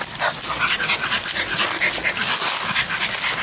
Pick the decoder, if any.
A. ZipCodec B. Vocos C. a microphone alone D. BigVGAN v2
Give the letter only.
C